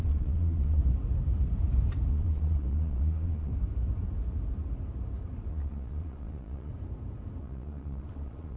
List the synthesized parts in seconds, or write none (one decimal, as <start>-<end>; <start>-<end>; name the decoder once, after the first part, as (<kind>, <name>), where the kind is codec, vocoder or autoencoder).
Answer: 0.0-0.8 (vocoder, Vocos); 2.1-3.5; 5.5-6.7; 7.4-8.6

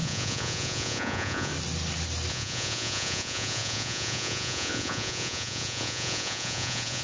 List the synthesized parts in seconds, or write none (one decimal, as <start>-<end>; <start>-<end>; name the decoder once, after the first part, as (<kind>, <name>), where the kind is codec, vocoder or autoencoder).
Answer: 0.0-1.5 (vocoder, Vocos); 2.3-7.0

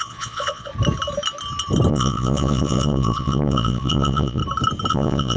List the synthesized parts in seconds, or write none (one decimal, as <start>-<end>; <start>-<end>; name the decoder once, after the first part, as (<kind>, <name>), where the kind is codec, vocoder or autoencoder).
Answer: 0.0-0.7 (vocoder, Vocos); 1.9-4.4; 4.9-5.4

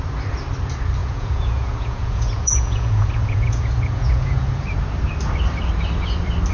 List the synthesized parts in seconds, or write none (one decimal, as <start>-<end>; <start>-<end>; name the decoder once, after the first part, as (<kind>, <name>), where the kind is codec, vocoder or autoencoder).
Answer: 1.0-4.6 (vocoder, Vocos)

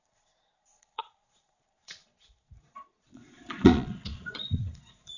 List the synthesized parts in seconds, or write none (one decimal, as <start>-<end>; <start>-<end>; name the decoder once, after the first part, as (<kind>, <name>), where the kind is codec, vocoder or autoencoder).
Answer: 0.0-5.2 (vocoder, Vocos)

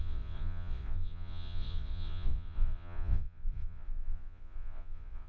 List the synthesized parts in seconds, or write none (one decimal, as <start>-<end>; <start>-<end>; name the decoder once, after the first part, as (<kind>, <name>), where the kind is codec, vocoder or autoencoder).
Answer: 0.0-5.3 (vocoder, Vocos)